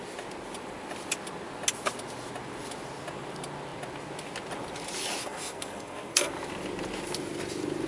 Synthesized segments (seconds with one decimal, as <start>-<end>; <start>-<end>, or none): 5.2-6.3